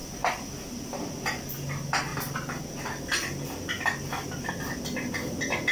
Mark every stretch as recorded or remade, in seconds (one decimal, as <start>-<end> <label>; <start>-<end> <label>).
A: 0.0-5.7 recorded